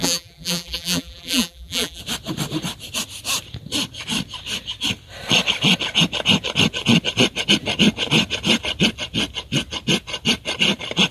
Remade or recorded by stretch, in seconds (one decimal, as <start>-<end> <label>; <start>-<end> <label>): 0.0-2.0 remade; 2.0-11.1 recorded

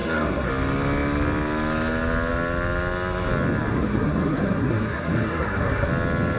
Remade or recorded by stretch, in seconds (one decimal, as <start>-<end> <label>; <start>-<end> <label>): 0.0-0.5 remade; 0.5-3.7 recorded; 3.7-5.9 remade; 5.9-6.4 recorded

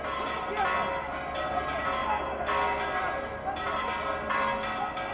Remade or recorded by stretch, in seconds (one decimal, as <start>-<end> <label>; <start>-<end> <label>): 0.0-5.1 recorded

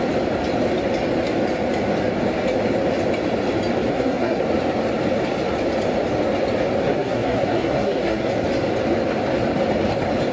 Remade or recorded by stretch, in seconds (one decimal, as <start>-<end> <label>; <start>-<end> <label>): 0.0-3.9 recorded; 3.9-4.4 remade; 4.4-6.8 recorded; 6.8-8.3 remade; 8.3-10.3 recorded

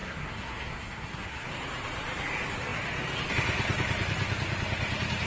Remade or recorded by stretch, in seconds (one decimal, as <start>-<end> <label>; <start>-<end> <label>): 0.0-1.5 remade; 1.5-5.3 recorded

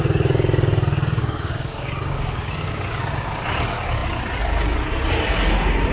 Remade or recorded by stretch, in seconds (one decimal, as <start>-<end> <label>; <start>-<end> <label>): 0.0-1.2 recorded; 1.2-3.0 remade; 3.0-5.9 recorded